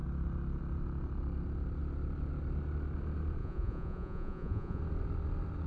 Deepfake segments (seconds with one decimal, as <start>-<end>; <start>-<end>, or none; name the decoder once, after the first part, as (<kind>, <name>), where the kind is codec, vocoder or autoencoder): 3.4-4.8 (vocoder, Vocos)